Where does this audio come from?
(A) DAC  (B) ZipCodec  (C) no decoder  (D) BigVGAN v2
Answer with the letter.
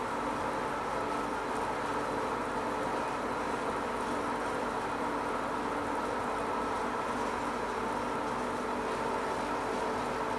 C